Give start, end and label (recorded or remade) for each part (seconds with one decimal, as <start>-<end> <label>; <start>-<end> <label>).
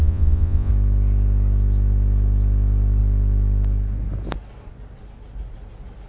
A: 0.0-0.7 remade; 0.7-6.1 recorded